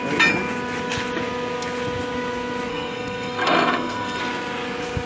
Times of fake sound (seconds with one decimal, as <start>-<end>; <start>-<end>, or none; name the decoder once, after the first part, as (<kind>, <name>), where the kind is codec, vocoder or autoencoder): 2.7-4.2 (codec, SNAC)